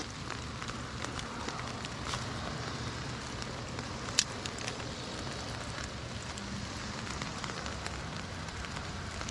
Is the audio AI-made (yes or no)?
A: yes